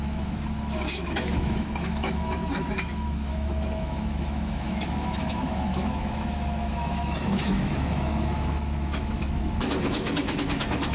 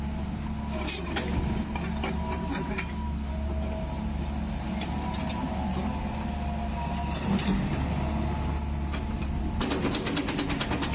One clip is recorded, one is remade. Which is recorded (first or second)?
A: second